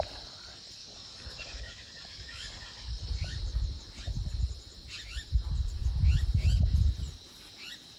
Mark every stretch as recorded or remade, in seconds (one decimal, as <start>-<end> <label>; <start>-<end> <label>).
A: 0.0-0.8 recorded; 0.8-2.9 remade; 2.9-8.0 recorded